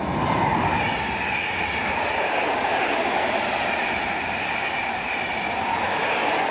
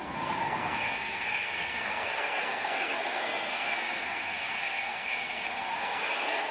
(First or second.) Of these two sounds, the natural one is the first